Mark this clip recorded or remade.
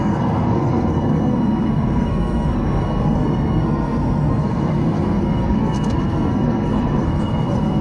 remade